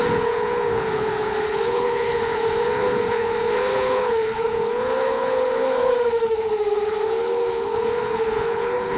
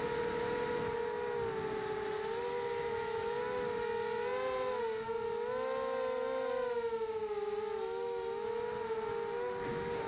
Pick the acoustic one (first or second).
second